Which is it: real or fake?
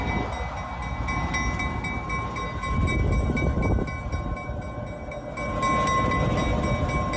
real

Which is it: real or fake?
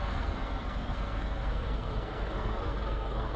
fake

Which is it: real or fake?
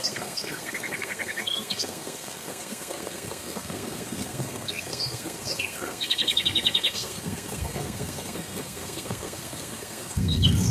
fake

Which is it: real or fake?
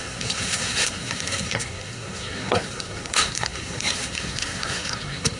fake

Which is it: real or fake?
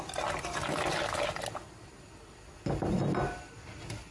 real